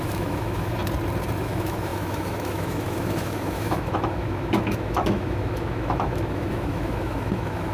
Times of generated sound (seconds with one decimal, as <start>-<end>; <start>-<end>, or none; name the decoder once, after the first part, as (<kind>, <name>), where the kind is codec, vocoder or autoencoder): 0.0-0.8 (autoencoder, DAC-VAE); 1.4-7.7